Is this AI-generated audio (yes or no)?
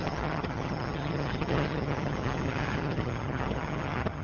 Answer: yes